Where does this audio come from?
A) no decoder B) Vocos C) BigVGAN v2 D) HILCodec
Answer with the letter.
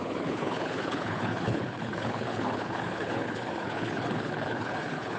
D